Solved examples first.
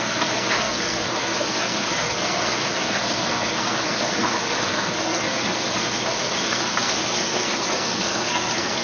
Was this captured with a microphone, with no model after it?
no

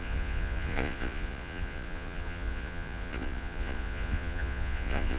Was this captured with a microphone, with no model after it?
no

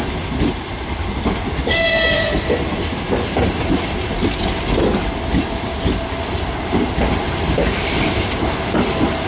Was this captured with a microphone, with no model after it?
yes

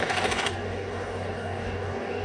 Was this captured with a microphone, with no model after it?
no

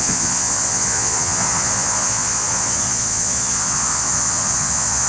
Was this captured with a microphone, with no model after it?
no